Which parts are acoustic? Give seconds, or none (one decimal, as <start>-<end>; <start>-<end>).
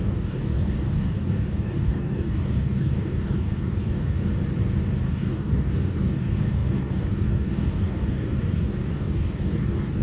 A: 4.2-5.1